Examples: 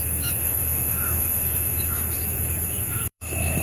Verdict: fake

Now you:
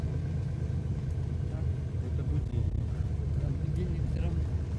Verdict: real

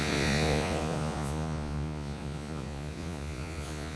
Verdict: fake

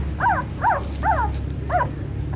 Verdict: real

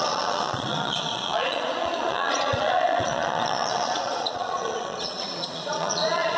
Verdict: fake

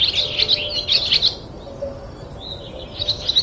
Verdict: real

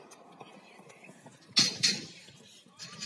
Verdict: real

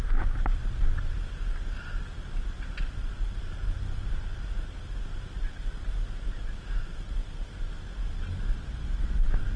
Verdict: real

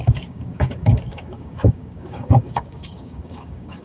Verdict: fake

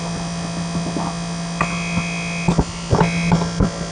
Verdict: real